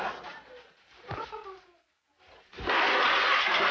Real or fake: real